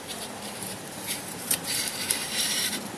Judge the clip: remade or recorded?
remade